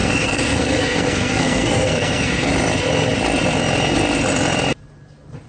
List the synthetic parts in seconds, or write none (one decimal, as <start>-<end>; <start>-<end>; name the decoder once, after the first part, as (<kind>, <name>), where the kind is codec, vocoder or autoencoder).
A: 0.0-2.5 (codec, SNAC)

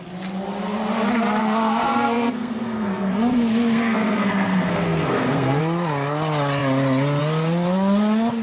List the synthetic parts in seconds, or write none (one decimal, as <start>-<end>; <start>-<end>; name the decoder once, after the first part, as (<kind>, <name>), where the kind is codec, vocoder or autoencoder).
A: 1.4-5.6 (codec, SNAC)

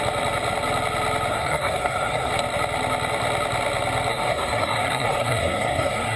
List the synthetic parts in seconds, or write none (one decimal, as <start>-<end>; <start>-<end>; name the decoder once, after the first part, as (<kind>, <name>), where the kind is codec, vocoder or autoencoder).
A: 1.3-2.3 (codec, SNAC); 4.1-6.2

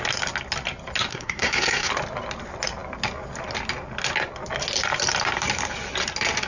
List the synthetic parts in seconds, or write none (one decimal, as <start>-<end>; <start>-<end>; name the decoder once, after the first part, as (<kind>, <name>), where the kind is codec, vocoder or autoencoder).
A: 1.1-1.9 (codec, SNAC)

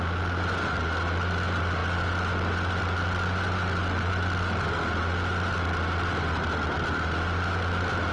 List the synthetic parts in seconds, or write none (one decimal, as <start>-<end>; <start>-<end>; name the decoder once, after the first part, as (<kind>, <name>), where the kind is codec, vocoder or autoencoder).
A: none